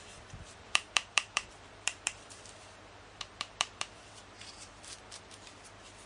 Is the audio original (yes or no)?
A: no